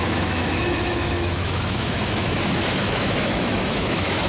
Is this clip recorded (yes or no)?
no